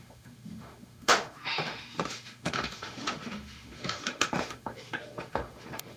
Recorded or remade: remade